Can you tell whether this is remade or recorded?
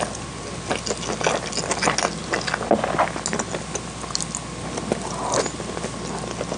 recorded